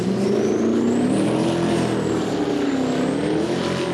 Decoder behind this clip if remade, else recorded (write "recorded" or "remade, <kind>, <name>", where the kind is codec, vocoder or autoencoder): recorded